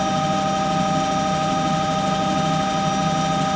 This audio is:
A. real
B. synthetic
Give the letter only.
A